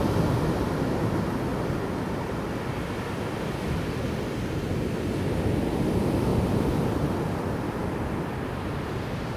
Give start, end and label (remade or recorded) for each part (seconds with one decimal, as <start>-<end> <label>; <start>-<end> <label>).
0.0-9.4 recorded